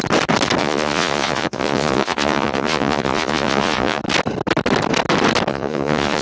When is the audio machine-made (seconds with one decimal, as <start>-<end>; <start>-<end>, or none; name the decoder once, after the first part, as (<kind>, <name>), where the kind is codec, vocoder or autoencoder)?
0.6-4.0 (vocoder, Vocos); 5.5-6.2